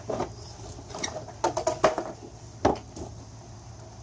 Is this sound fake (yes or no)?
no